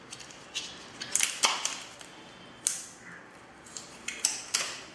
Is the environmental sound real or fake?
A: real